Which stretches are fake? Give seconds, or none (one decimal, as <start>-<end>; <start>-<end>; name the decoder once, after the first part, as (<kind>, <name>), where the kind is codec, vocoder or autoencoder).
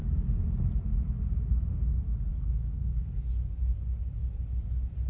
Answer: 2.3-3.1 (codec, DAC)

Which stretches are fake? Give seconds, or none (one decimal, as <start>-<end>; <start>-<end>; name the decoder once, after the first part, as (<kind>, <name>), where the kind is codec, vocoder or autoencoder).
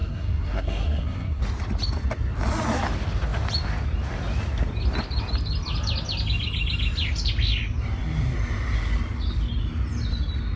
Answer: 0.0-1.4 (codec, SNAC)